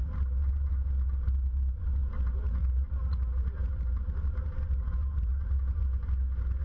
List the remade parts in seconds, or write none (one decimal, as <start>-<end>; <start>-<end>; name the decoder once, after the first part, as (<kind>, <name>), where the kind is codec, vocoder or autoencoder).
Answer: 0.0-0.7 (vocoder, BigVGAN v2); 2.0-5.8